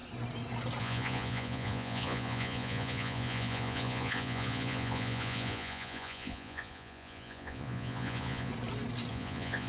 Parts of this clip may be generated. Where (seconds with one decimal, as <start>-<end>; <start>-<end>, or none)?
0.8-8.5; 9.1-9.7

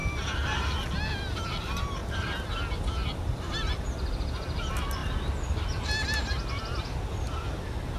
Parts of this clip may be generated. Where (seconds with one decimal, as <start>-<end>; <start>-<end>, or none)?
none

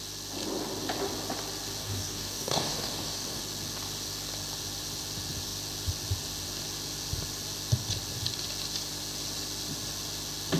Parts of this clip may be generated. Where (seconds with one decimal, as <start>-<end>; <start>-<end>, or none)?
1.8-3.4

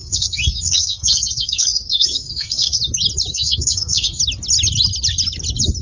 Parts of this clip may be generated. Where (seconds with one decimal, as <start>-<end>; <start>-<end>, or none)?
0.0-2.8; 3.3-4.2